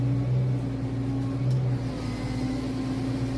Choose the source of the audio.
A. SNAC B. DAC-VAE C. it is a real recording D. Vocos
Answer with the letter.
C